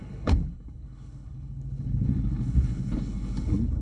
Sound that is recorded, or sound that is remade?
remade